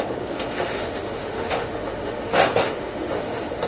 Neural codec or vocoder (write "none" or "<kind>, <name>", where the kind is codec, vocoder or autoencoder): autoencoder, DAC-VAE